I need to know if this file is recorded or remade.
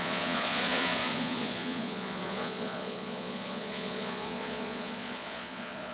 remade